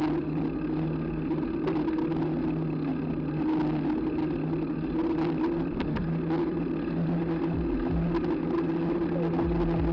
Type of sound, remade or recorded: recorded